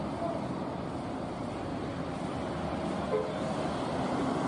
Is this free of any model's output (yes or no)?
yes